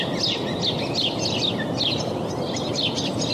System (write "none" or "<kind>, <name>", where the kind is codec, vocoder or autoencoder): none